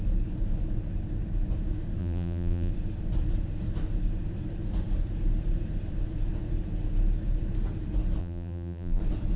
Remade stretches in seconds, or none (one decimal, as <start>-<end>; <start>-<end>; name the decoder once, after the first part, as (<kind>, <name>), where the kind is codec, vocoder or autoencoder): 2.0-2.7 (vocoder, BigVGAN v2); 8.2-9.0